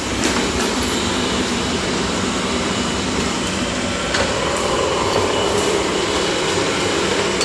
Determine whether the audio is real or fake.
fake